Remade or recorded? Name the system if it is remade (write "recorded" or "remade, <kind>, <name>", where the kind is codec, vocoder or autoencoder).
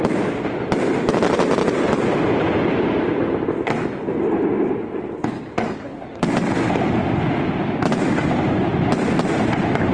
recorded